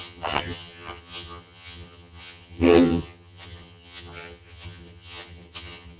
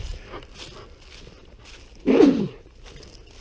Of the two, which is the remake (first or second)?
first